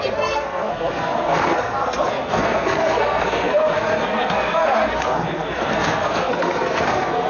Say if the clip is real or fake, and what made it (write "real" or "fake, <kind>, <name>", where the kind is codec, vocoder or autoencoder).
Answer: fake, codec, SNAC